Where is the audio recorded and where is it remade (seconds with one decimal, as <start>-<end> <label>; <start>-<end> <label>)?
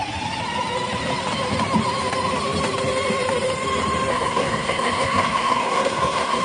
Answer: 0.0-4.1 recorded; 4.1-6.4 remade